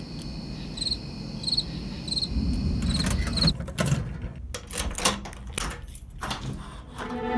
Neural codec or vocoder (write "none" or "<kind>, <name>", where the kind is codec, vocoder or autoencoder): none